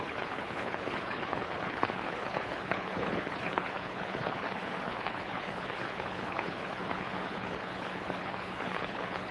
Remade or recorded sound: remade